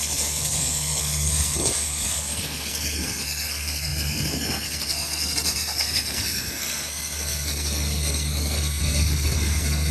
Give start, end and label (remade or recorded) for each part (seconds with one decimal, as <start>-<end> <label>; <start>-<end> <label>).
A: 0.0-9.9 remade